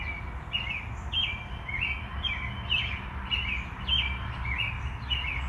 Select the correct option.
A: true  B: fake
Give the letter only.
A